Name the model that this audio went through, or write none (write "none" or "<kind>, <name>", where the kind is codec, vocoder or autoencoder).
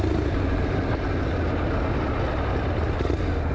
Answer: none